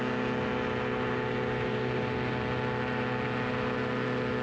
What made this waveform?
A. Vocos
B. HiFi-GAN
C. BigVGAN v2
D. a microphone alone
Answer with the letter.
D